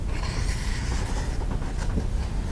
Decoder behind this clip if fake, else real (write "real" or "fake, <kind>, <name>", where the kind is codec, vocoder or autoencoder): real